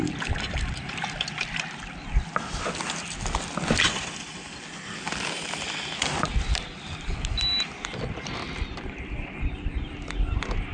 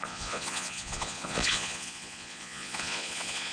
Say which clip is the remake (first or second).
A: second